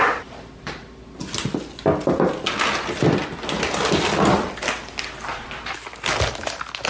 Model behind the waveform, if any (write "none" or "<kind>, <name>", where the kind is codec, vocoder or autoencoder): none